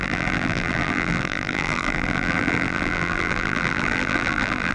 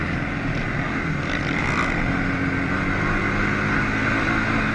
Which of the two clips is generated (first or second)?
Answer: first